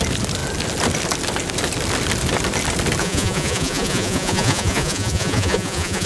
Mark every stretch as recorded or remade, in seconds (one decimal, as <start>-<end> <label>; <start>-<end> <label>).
0.0-3.0 recorded; 3.0-6.1 remade